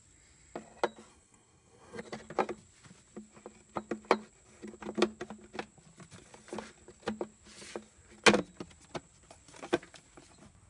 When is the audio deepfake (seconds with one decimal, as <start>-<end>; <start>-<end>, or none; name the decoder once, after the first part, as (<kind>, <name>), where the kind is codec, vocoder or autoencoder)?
1.1-2.0 (codec, SNAC)